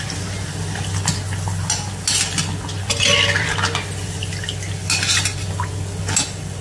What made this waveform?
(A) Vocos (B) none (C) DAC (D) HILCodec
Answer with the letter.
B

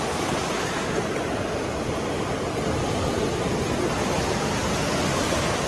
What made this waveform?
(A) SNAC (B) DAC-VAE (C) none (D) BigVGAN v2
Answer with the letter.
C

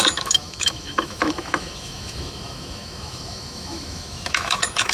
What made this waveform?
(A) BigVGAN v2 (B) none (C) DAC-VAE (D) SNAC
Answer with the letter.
C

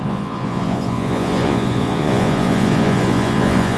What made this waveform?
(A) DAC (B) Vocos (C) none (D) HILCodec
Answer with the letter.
B